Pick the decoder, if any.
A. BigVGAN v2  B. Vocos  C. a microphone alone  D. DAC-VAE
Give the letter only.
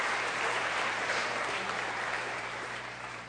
A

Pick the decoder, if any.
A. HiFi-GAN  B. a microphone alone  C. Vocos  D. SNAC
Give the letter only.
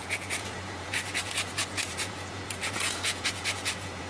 C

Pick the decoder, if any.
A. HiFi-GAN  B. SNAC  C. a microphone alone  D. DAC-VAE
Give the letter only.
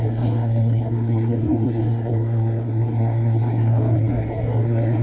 B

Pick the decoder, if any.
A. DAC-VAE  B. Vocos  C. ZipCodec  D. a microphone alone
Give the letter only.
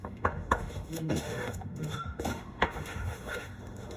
A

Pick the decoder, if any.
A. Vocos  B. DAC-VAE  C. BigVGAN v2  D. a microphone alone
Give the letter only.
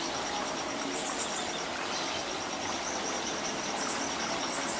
D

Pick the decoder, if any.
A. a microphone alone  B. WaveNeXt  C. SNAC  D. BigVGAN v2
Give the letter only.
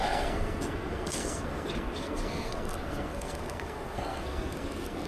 C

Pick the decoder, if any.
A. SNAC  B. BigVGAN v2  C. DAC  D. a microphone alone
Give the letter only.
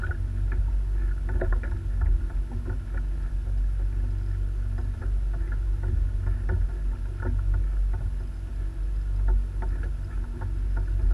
D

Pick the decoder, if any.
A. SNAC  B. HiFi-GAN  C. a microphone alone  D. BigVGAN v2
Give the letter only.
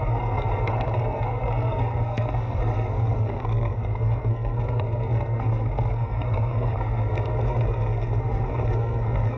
A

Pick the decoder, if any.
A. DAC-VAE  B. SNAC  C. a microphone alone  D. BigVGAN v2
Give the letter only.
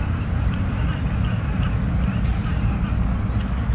C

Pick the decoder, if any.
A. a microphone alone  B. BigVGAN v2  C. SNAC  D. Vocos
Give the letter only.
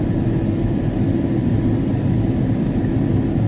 A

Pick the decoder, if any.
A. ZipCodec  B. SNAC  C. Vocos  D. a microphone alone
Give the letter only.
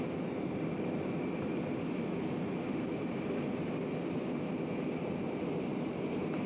D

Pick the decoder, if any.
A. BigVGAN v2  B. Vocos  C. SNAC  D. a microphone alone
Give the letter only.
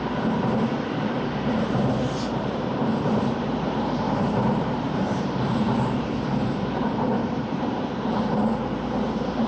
A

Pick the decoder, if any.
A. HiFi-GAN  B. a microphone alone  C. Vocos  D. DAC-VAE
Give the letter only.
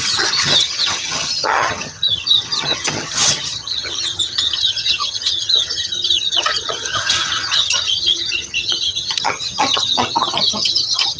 A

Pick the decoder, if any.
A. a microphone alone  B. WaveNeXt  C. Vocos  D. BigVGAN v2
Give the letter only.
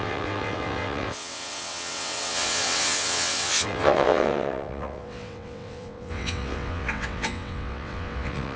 B